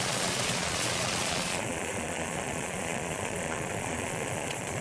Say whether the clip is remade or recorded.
remade